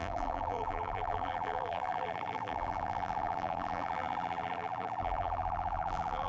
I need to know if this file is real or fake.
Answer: fake